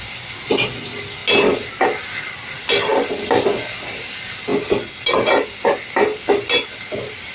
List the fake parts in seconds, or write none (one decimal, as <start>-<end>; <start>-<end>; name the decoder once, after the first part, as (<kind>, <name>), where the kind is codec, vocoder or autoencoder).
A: 2.9-3.5 (vocoder, BigVGAN v2)